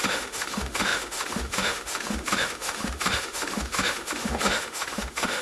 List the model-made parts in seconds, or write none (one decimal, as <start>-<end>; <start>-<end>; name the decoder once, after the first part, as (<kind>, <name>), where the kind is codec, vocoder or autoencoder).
0.0-5.4 (autoencoder, DAC-VAE)